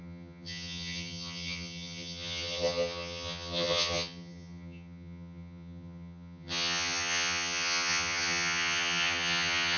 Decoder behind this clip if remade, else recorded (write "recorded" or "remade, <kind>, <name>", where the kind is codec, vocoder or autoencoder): remade, vocoder, HiFi-GAN